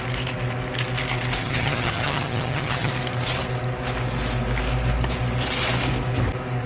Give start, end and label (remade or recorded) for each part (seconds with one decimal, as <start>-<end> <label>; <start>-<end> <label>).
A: 0.0-1.4 recorded; 1.4-2.9 remade; 2.9-6.7 recorded